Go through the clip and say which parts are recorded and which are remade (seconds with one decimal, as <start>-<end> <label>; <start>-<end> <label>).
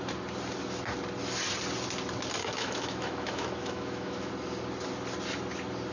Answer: 0.0-2.4 recorded; 2.4-4.3 remade; 4.3-5.9 recorded